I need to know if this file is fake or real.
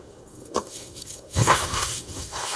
fake